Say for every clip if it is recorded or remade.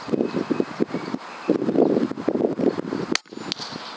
recorded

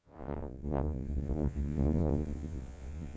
remade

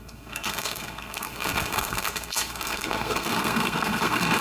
remade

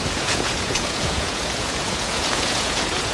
remade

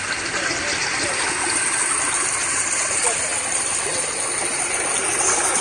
recorded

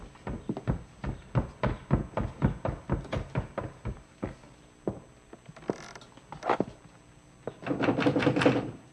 recorded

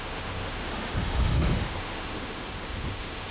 remade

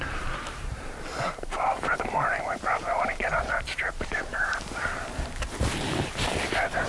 remade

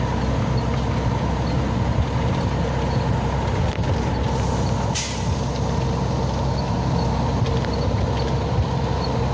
recorded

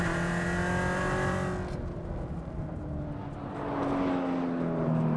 recorded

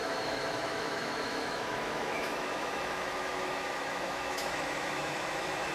remade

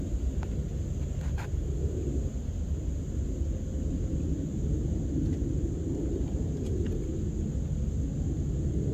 recorded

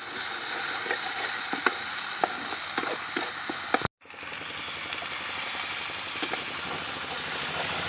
recorded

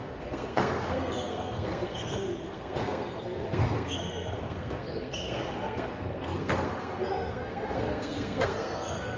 remade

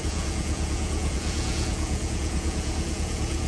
remade